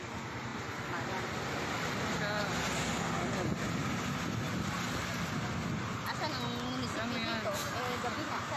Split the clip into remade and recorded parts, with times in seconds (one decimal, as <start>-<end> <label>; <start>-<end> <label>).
0.0-8.6 recorded